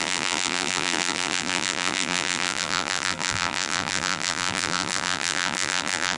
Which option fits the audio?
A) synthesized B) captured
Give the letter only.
A